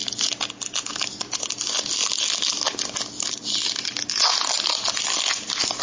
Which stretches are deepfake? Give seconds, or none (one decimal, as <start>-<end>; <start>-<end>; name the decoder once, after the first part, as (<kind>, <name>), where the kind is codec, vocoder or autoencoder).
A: none